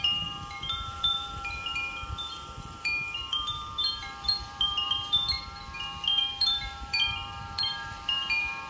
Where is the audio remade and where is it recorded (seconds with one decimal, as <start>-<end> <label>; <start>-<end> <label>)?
0.0-8.7 remade